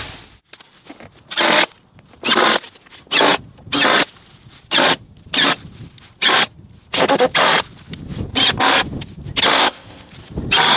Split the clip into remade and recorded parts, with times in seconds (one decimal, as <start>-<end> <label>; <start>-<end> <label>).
0.0-9.6 recorded; 9.6-10.1 remade; 10.1-10.8 recorded